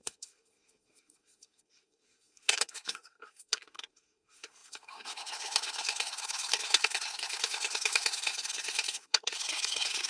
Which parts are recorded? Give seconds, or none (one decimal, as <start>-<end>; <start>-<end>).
none